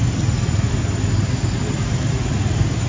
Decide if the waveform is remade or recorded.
recorded